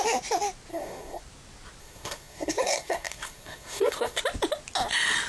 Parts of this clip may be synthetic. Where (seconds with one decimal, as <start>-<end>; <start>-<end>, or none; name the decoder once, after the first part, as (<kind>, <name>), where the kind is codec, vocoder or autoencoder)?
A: 0.7-1.2 (codec, SNAC); 1.8-4.2